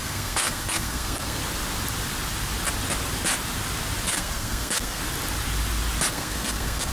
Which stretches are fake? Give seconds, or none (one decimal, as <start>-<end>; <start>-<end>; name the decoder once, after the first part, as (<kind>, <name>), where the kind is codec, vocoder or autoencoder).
0.0-1.4 (codec, SNAC); 4.1-5.0; 6.1-6.9